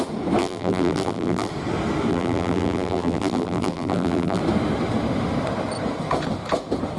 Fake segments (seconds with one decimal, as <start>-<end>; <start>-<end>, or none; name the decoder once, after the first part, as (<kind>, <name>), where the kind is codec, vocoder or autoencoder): 0.4-1.5 (vocoder, BigVGAN v2); 2.1-4.4

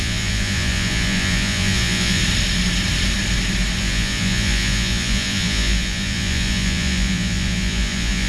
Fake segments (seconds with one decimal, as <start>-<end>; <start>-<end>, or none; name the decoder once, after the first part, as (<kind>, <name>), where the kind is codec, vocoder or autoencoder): 0.0-2.2 (vocoder, Vocos); 3.8-8.3

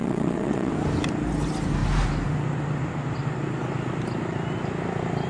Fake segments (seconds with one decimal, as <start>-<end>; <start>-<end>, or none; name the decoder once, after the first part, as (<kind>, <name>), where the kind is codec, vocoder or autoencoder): 0.0-0.7 (vocoder, WaveNeXt)

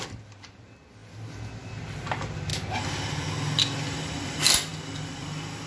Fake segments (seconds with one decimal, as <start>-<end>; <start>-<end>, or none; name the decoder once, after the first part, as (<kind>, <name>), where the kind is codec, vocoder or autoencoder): none

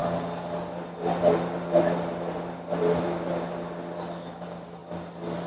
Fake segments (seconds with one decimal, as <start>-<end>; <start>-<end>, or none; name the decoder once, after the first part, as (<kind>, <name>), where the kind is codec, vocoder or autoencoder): 0.0-4.8 (vocoder, BigVGAN v2)